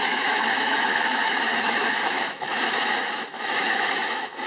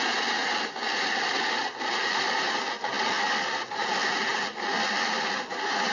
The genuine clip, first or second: second